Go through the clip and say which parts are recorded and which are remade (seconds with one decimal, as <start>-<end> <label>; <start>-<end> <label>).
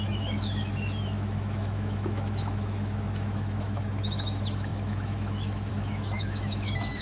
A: 0.0-7.0 remade